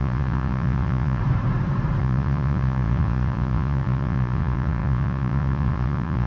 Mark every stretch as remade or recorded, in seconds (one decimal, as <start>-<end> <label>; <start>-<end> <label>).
0.0-1.2 remade; 1.2-2.0 recorded; 2.0-6.3 remade